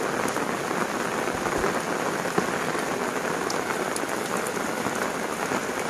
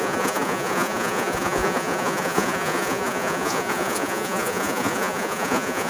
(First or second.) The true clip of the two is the first